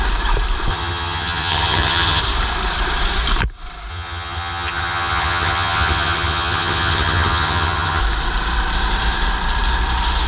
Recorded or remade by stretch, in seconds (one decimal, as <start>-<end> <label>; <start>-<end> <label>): 0.0-0.7 recorded; 0.7-2.2 remade; 2.2-3.9 recorded; 3.9-8.0 remade; 8.0-10.3 recorded